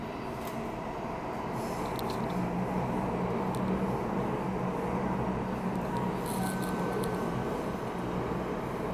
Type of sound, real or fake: real